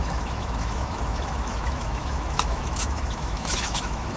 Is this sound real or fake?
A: fake